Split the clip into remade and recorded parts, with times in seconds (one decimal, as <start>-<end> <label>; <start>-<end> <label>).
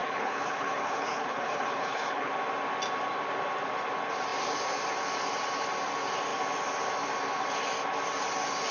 0.0-2.3 remade; 2.3-8.7 recorded